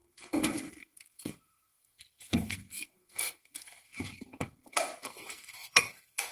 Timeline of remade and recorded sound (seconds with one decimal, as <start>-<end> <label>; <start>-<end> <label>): 0.0-6.3 remade